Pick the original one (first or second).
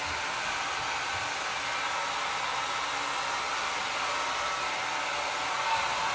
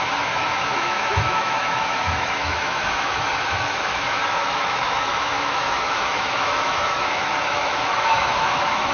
first